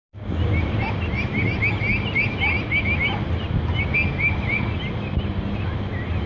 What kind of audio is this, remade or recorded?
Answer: recorded